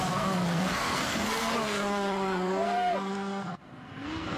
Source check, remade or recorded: remade